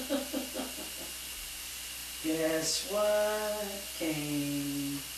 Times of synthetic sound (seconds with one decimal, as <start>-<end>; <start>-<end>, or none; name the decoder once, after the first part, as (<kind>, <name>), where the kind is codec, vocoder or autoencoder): none